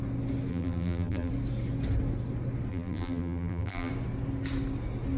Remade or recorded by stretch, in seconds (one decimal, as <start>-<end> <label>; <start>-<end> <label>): 0.0-0.5 recorded; 0.5-1.3 remade; 1.3-2.7 recorded; 2.7-3.9 remade; 3.9-5.2 recorded